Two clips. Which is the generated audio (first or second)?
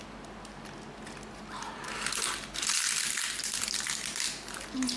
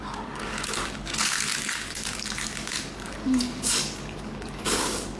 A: second